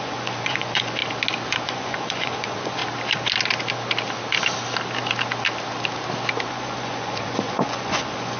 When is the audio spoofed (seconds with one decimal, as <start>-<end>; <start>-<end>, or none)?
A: 0.0-1.0; 1.6-2.8; 6.5-8.4